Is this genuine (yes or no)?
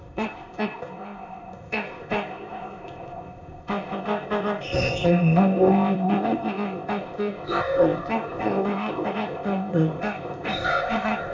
no